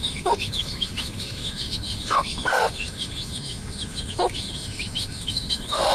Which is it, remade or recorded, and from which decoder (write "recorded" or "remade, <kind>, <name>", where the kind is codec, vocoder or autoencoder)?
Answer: remade, autoencoder, DAC-VAE